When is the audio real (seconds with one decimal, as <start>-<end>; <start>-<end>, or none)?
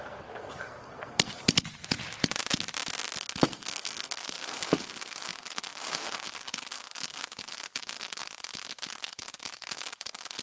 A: 1.4-3.2